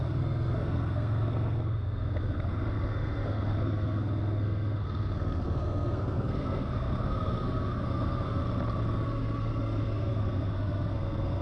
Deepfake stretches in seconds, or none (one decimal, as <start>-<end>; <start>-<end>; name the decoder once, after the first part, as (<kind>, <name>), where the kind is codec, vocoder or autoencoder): 0.0-8.4 (codec, SNAC); 8.9-11.4